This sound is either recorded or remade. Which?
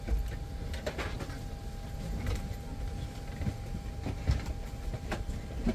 recorded